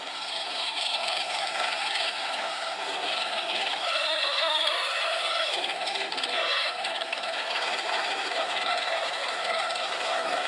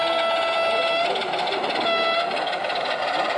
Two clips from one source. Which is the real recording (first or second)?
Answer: second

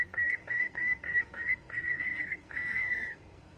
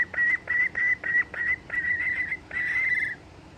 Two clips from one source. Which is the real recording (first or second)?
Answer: second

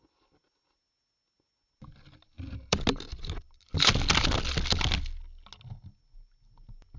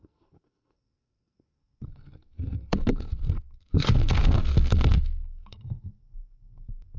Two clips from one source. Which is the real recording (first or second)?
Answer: first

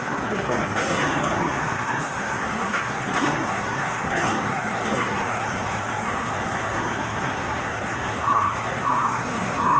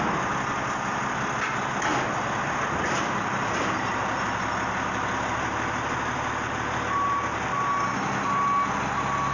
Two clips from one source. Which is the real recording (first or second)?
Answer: second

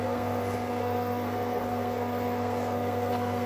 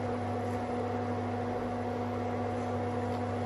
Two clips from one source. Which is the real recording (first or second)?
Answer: second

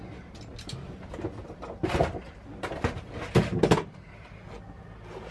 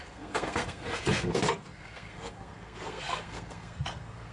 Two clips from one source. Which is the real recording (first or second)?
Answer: first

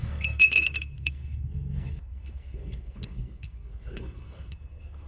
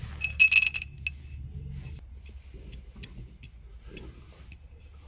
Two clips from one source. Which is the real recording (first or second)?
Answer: second